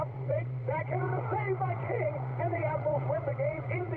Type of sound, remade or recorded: remade